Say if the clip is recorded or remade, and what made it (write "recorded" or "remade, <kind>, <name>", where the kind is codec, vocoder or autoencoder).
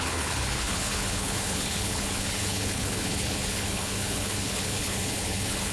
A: remade, codec, HILCodec